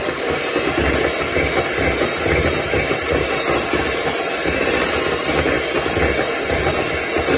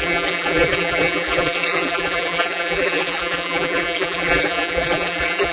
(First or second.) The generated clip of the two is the second